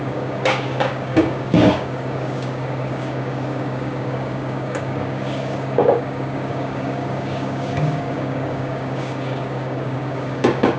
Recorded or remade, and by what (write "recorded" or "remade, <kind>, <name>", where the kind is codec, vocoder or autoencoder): remade, codec, DAC